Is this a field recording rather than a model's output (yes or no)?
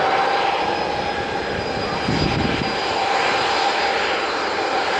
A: yes